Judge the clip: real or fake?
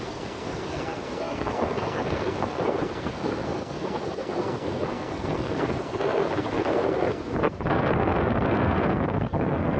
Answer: fake